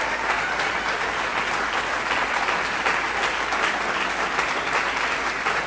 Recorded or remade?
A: recorded